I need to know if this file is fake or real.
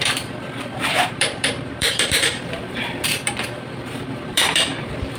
fake